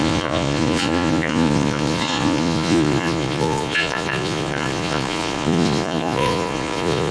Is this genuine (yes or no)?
no